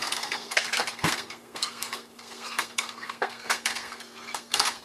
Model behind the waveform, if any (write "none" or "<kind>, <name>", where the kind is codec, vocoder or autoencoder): codec, SNAC